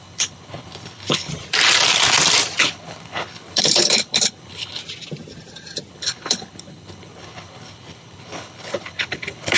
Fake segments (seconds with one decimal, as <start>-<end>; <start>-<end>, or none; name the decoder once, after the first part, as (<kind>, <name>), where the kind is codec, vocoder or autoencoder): 0.0-1.3 (codec, HILCodec); 2.6-4.8; 5.9-9.6